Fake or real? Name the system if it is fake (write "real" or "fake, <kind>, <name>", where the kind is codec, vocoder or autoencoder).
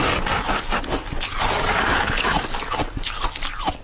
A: real